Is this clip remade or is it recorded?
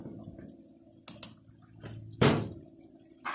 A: recorded